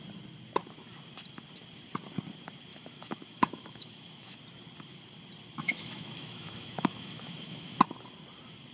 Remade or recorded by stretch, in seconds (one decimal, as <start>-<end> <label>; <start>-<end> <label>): 0.0-2.7 recorded; 2.7-4.4 remade; 4.4-5.6 recorded; 5.6-7.8 remade; 7.8-8.7 recorded